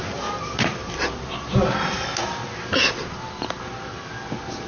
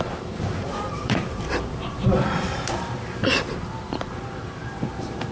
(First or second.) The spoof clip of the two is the second